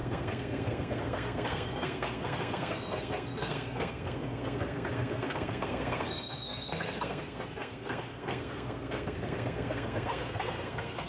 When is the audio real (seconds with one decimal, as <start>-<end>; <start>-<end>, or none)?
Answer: none